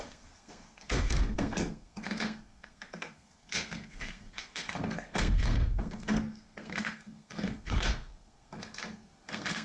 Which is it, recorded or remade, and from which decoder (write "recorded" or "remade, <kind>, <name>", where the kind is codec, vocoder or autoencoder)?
remade, codec, SNAC